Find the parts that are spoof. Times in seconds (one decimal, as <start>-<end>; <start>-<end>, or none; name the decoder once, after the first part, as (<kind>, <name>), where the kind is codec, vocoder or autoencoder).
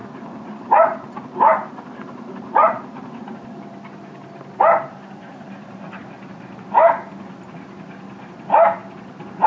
0.0-3.2 (vocoder, BigVGAN v2); 4.9-6.0; 9.0-9.5